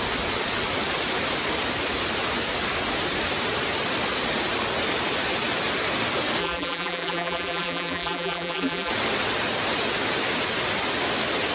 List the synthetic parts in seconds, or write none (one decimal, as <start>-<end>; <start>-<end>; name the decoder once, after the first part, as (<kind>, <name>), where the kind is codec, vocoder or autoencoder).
6.4-8.9 (vocoder, BigVGAN v2)